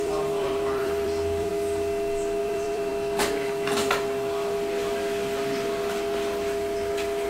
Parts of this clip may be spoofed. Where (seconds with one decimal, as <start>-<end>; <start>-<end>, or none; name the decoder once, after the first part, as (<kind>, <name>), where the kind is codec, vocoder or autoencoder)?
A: 0.0-1.5 (vocoder, BigVGAN v2); 2.4-2.9